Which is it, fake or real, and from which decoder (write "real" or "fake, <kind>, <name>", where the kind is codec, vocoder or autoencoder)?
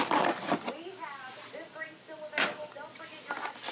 real